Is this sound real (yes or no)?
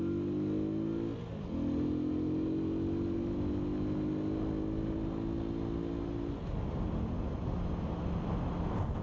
yes